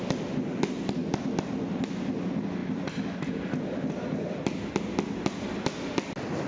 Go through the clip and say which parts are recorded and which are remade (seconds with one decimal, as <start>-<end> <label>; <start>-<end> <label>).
0.0-6.5 recorded